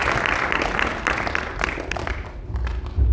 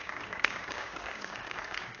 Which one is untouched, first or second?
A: first